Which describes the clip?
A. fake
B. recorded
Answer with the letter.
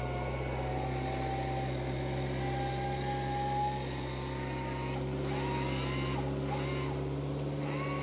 B